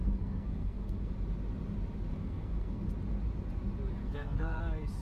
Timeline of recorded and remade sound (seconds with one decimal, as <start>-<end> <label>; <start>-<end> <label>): 0.0-1.1 remade; 1.1-2.1 recorded; 2.1-2.9 remade; 2.9-4.0 recorded; 4.0-4.6 remade; 4.6-5.0 recorded